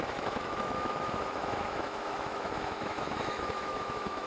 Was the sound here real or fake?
fake